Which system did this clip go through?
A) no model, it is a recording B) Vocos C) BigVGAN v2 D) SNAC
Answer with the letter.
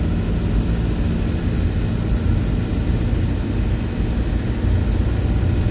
A